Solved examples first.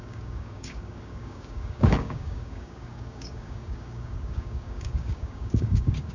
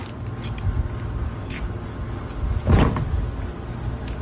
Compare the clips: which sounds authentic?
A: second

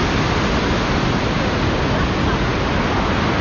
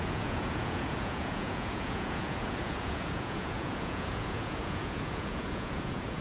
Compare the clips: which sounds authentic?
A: first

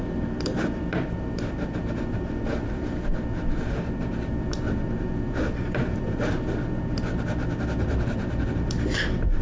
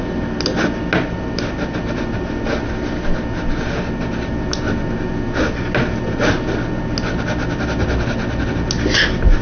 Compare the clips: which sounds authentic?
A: second